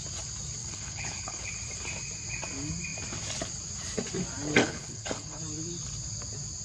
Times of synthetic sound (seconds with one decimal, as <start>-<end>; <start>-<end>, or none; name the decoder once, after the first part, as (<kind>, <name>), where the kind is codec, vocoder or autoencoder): 0.6-1.5 (codec, HILCodec); 4.6-5.4